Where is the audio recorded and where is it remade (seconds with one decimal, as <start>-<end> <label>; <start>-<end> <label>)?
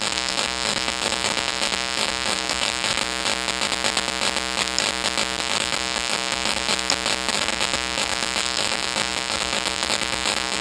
0.0-3.0 remade; 3.0-5.4 recorded; 5.4-6.7 remade; 6.7-7.3 recorded; 7.3-10.6 remade